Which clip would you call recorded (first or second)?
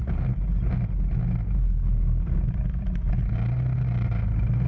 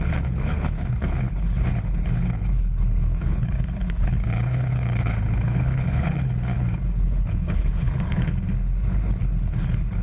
first